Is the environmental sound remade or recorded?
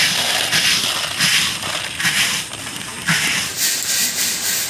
recorded